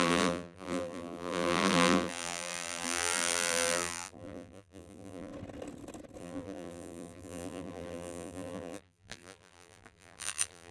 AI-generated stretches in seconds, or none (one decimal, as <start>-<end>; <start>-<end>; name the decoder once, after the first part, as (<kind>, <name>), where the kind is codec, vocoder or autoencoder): 0.0-5.3 (vocoder, BigVGAN v2); 6.2-10.7